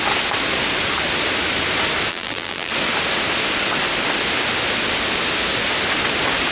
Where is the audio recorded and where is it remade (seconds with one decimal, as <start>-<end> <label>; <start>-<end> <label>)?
0.0-2.1 recorded; 2.1-2.7 remade; 2.7-6.5 recorded